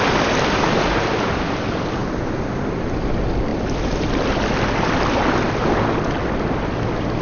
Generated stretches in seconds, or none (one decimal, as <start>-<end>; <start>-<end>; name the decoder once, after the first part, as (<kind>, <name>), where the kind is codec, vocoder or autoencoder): none